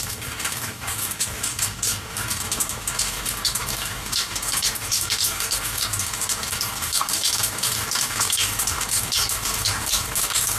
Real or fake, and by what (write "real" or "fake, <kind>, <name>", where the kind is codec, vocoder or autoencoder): fake, codec, DAC